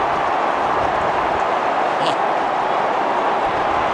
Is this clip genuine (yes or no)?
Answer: yes